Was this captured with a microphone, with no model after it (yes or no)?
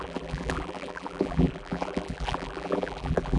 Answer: no